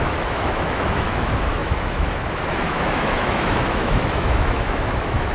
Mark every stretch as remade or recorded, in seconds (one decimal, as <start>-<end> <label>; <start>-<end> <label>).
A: 0.0-5.3 remade